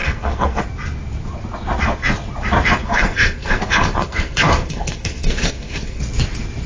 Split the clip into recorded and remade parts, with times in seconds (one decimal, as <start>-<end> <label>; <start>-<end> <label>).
0.0-0.6 remade; 0.6-2.8 recorded; 2.8-6.0 remade; 6.0-6.7 recorded